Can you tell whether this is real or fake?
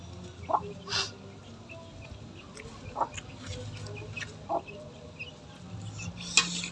real